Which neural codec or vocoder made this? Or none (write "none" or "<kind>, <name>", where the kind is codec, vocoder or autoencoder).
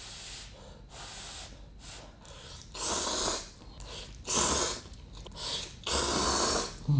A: none